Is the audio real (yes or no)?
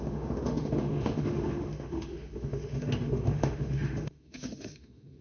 no